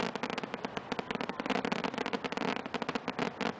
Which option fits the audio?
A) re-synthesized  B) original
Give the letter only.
B